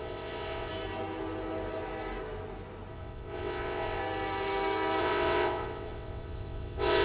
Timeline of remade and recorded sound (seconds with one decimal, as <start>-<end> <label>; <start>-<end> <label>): 0.0-0.7 remade; 0.7-2.9 recorded; 2.9-4.0 remade; 4.0-5.0 recorded; 5.0-7.0 remade